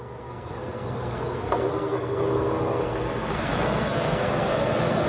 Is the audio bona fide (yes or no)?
no